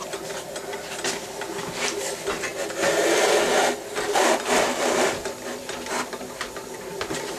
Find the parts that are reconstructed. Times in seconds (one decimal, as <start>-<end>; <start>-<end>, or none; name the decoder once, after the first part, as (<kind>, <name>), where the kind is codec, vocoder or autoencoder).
5.5-6.3 (vocoder, BigVGAN v2)